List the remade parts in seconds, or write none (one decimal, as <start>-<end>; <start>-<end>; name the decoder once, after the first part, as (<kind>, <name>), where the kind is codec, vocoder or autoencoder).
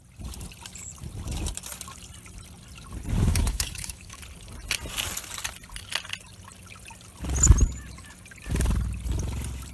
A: 3.3-4.2 (autoencoder, DAC-VAE)